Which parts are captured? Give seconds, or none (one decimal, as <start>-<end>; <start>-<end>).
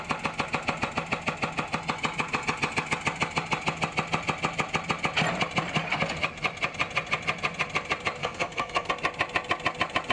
0.0-8.2; 8.9-10.1